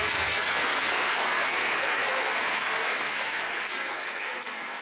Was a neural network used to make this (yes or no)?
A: yes